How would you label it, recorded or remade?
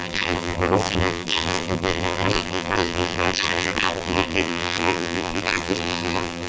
remade